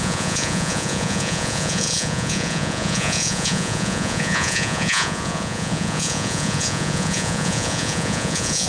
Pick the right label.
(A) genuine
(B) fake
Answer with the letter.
B